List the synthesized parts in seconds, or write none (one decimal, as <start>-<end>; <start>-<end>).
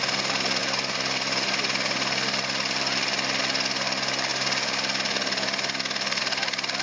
none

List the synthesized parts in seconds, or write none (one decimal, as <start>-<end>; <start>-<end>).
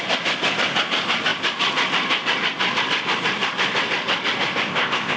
4.7-5.2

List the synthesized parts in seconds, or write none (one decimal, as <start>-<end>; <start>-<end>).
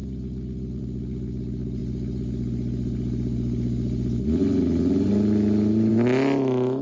none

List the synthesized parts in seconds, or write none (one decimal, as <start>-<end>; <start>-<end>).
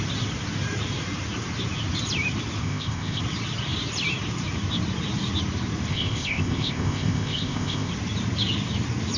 2.6-3.2; 5.9-7.9